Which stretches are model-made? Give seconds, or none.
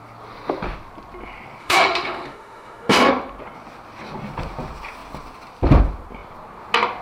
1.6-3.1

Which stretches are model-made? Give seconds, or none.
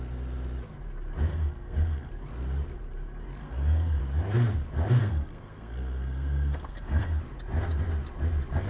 1.3-2.1; 3.4-4.0; 5.0-7.2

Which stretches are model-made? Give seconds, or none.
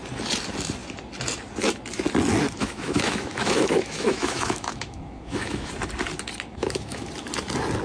2.6-5.7; 6.5-7.1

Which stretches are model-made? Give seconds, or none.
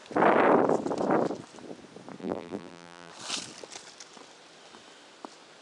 2.2-3.1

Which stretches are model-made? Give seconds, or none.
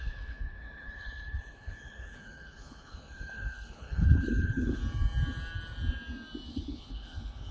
0.0-4.8; 6.5-7.5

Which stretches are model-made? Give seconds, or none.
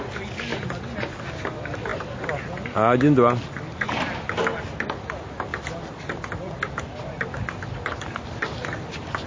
none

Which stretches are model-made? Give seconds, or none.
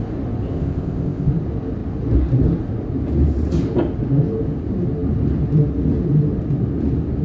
0.5-1.3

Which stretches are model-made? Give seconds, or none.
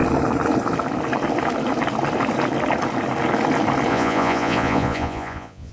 3.9-5.7